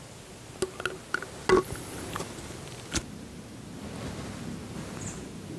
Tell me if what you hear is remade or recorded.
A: recorded